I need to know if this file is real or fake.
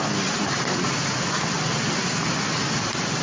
real